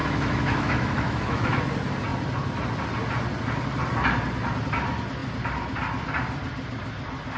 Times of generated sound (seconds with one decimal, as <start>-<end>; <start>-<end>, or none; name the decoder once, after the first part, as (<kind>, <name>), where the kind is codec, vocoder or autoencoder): 0.0-1.6 (autoencoder, DAC-VAE)